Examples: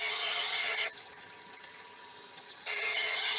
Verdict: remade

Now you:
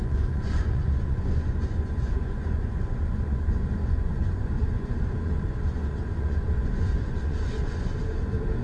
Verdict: remade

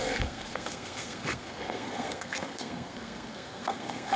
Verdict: remade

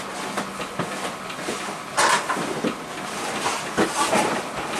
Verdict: recorded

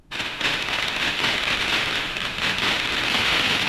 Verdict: remade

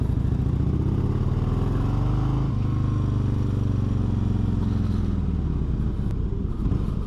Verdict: recorded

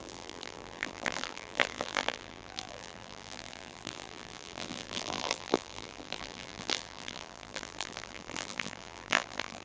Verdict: remade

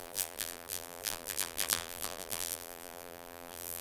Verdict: remade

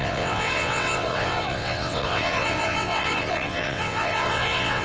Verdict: remade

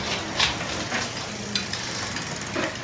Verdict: recorded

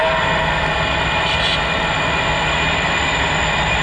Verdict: recorded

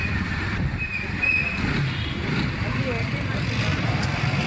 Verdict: remade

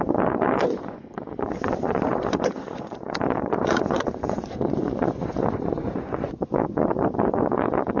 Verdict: remade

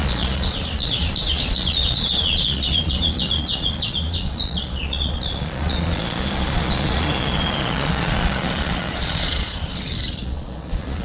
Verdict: remade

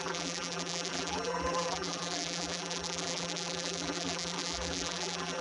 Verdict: remade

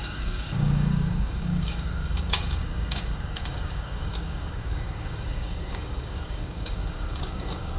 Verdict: remade